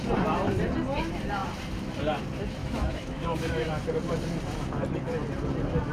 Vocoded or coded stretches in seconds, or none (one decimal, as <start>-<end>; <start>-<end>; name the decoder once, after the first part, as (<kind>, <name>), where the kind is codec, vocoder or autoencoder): 2.6-3.7 (autoencoder, DAC-VAE)